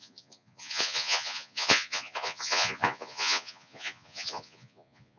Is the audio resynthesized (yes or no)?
yes